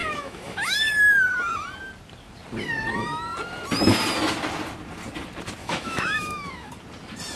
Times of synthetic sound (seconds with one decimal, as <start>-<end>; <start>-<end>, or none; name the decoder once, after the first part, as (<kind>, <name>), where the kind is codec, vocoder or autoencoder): 0.0-0.8 (autoencoder, DAC-VAE); 5.6-6.7

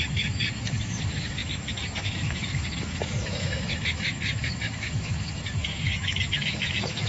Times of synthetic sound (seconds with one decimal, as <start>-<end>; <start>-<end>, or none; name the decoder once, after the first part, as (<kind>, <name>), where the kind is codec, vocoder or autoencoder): 0.0-7.1 (autoencoder, DAC-VAE)

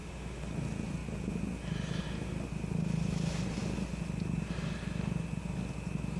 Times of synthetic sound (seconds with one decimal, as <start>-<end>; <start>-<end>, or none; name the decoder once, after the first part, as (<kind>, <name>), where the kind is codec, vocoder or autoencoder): 0.0-0.5 (autoencoder, DAC-VAE)